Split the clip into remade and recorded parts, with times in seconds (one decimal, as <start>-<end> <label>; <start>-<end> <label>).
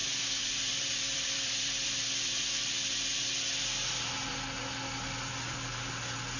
0.0-2.4 remade; 2.4-6.4 recorded